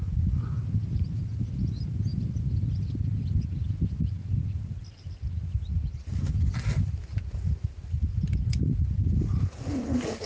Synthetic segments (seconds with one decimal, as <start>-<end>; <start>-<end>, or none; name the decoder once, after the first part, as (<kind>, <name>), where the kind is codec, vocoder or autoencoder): none